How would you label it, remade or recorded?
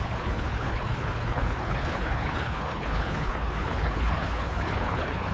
remade